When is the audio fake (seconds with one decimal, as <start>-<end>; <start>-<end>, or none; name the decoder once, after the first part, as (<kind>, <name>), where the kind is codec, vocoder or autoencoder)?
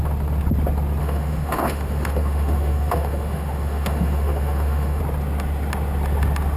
1.0-5.0 (autoencoder, DAC-VAE)